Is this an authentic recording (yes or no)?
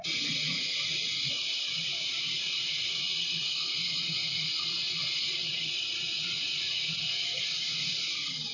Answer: no